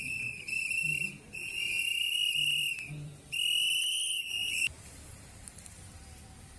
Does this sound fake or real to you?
real